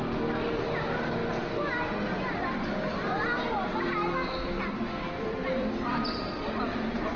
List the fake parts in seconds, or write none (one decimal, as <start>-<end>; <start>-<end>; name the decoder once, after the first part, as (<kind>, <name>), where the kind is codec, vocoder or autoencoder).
0.0-1.2 (vocoder, BigVGAN v2); 5.2-7.2